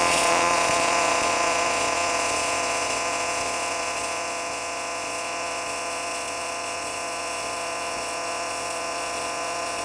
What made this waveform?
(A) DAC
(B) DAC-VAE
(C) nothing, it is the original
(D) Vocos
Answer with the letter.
D